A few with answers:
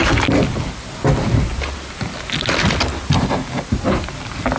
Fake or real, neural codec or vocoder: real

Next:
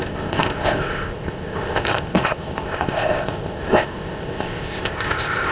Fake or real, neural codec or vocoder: fake, codec, ZipCodec